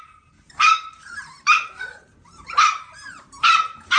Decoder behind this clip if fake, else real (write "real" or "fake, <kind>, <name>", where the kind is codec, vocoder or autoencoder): fake, vocoder, BigVGAN v2